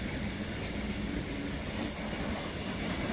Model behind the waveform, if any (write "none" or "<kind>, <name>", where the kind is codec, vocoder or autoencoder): none